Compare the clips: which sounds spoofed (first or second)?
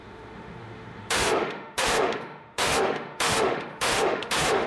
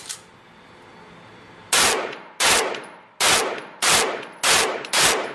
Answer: first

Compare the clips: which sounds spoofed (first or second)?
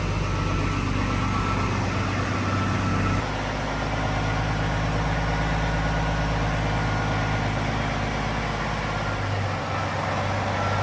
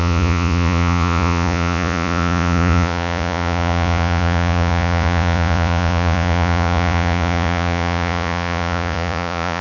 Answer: second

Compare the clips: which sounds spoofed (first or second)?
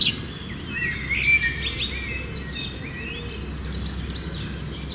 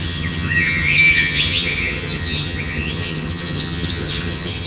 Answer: second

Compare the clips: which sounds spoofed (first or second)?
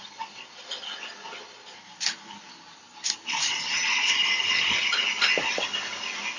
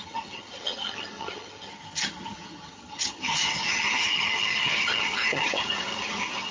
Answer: second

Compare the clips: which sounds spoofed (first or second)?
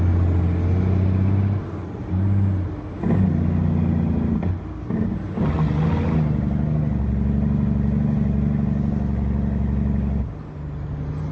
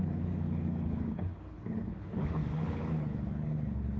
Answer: second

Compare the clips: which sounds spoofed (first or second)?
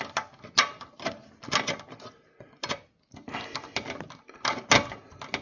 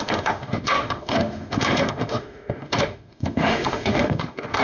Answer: second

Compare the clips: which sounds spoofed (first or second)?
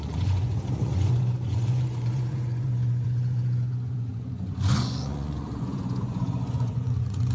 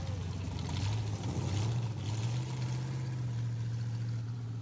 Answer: first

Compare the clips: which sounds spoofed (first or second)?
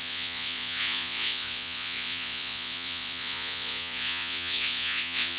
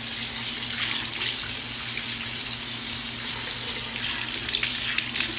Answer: first